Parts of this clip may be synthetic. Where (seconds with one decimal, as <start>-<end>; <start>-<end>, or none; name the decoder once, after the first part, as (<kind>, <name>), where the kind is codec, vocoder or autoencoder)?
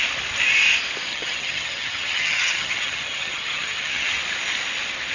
1.1-4.2 (vocoder, HiFi-GAN)